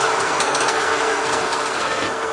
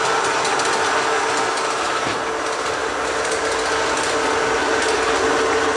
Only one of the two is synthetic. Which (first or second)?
first